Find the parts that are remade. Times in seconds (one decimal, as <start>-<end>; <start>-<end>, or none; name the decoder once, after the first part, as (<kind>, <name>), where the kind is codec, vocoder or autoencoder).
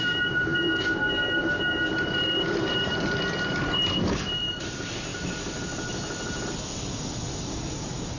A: 0.0-5.1 (vocoder, BigVGAN v2); 7.5-8.2